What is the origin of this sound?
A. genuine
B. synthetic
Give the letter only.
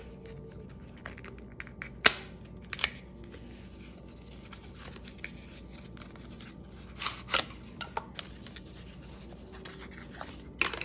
A